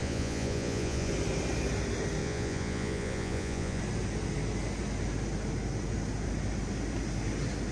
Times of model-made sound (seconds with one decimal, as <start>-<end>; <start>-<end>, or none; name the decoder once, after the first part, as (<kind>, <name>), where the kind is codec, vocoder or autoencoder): 0.0-1.1 (vocoder, Vocos); 2.2-3.8